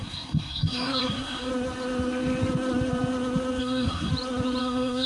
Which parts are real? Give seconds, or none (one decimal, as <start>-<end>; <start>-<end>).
1.5-3.6; 4.1-4.6